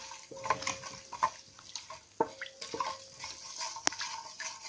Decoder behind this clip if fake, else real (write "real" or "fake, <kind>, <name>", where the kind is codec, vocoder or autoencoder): real